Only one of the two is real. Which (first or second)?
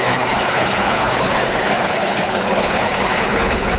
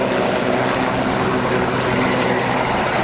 second